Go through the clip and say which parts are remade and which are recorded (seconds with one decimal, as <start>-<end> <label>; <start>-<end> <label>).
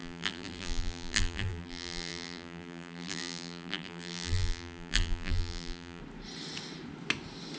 0.0-6.0 remade; 6.0-7.6 recorded